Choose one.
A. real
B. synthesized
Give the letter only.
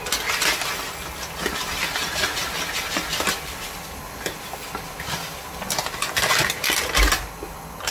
A